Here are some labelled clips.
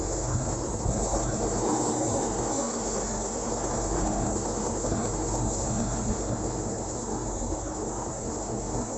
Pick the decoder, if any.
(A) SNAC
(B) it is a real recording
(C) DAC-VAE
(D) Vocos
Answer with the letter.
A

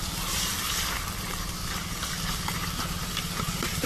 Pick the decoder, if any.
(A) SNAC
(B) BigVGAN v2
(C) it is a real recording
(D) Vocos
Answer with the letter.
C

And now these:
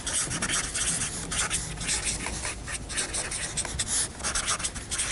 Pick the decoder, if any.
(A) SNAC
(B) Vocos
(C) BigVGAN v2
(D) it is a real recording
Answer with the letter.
D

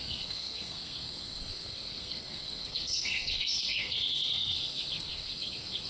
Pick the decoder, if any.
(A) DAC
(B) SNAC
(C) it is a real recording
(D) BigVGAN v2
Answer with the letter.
B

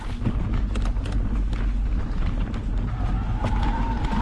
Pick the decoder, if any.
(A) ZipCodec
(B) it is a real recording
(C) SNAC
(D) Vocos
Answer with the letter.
B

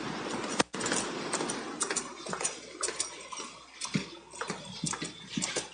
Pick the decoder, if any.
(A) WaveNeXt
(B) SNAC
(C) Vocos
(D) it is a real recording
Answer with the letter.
D